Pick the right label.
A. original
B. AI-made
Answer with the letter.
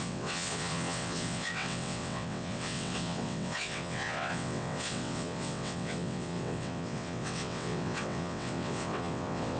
B